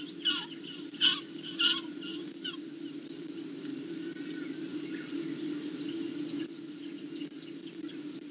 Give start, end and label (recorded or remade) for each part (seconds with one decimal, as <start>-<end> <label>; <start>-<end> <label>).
0.0-2.1 recorded; 2.1-2.6 remade; 2.6-3.7 recorded; 3.7-5.9 remade; 5.9-8.3 recorded